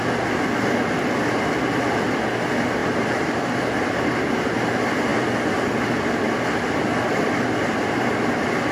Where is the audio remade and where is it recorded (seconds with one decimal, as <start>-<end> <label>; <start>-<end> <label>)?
0.0-2.8 recorded; 2.8-4.1 remade; 4.1-8.7 recorded